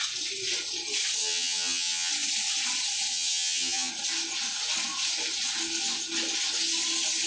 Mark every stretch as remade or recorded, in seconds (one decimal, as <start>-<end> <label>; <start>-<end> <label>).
0.0-1.2 recorded; 1.2-2.1 remade; 2.1-3.1 recorded; 3.1-3.9 remade; 3.9-7.3 recorded